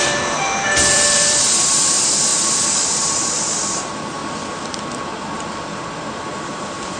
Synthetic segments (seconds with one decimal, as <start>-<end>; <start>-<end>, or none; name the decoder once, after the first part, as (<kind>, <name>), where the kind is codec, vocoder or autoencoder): 0.0-4.2 (vocoder, BigVGAN v2); 6.4-7.0

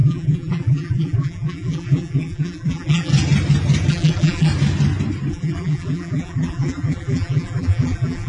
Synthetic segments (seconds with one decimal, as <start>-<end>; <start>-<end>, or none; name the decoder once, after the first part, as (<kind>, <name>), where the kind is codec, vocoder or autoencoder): 0.0-3.1 (vocoder, BigVGAN v2); 3.9-4.5; 5.3-8.3